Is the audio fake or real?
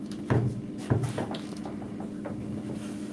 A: real